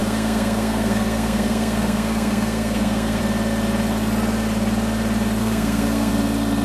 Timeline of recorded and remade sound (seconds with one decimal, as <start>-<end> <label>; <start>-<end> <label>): 0.0-3.2 remade; 3.2-5.4 recorded; 5.4-6.1 remade; 6.1-6.6 recorded